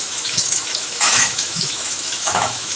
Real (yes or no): no